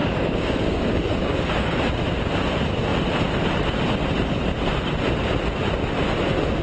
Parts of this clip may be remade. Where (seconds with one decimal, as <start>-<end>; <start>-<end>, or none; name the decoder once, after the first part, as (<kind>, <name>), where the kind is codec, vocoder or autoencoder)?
0.0-1.8 (codec, DAC)